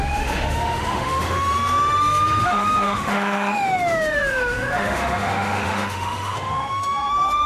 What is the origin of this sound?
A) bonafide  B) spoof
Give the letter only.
B